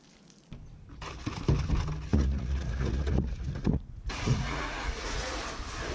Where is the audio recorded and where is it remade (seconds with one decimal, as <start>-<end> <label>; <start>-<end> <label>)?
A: 0.0-2.1 recorded; 2.1-5.4 remade; 5.4-5.9 recorded